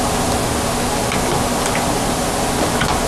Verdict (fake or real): real